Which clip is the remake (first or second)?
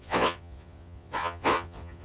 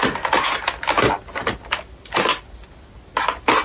first